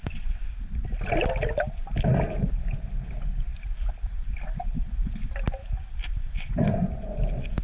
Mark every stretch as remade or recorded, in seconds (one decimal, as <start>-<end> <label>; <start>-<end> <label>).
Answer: 0.0-0.5 remade; 0.5-7.6 recorded